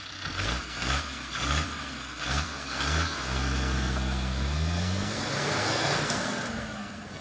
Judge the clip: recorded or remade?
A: remade